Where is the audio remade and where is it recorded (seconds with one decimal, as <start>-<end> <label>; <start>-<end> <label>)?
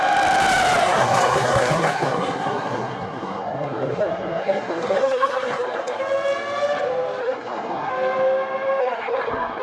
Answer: 0.0-0.8 recorded; 0.8-6.0 remade; 6.0-7.2 recorded; 7.2-7.9 remade; 7.9-8.8 recorded; 8.8-9.6 remade